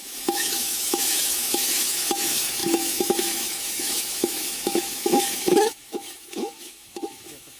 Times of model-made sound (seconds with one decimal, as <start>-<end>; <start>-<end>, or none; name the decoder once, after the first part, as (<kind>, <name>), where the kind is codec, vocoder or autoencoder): 0.0-7.6 (autoencoder, DAC-VAE)